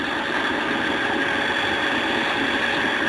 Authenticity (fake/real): real